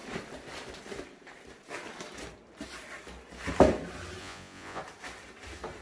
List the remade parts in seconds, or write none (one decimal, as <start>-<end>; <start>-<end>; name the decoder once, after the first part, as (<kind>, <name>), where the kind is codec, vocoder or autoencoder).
4.2-4.8 (vocoder, Vocos)